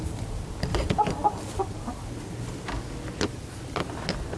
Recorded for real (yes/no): yes